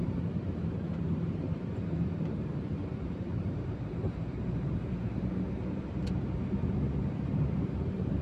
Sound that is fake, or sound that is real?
fake